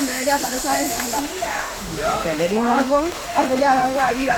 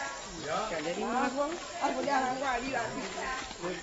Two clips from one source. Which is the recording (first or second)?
second